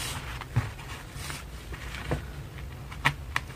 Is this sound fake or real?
real